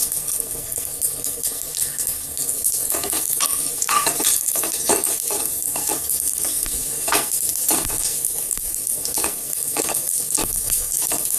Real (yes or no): no